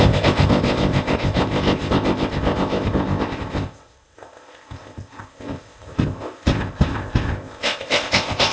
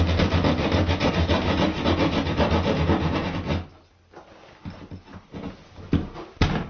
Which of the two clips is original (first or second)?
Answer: second